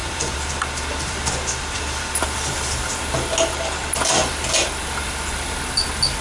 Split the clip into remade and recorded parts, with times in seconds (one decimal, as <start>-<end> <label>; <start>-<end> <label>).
0.0-0.5 remade; 0.5-0.9 recorded; 0.9-3.0 remade; 3.0-6.2 recorded